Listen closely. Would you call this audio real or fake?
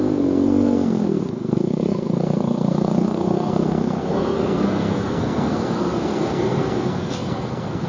fake